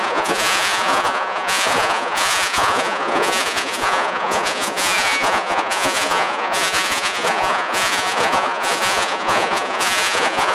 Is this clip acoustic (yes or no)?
no